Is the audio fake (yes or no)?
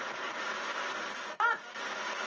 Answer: no